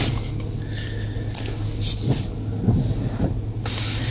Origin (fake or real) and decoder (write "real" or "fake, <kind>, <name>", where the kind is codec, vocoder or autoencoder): real